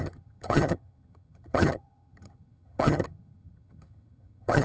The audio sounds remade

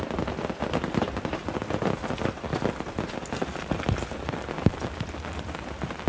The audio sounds recorded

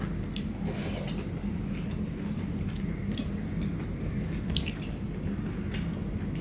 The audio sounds recorded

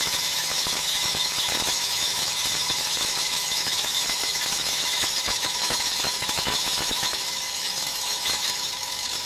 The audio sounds remade